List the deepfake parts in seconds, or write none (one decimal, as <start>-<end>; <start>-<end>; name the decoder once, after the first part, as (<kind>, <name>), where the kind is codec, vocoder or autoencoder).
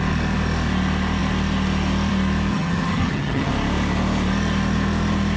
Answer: 2.5-3.5 (vocoder, HiFi-GAN)